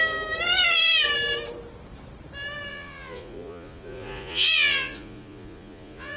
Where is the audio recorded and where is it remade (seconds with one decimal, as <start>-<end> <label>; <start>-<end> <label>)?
0.0-2.7 recorded; 2.7-6.2 remade